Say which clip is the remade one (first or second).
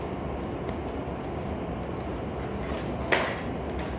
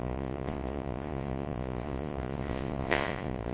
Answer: second